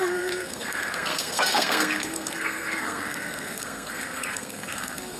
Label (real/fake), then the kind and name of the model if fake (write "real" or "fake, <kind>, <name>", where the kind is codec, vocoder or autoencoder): fake, codec, SNAC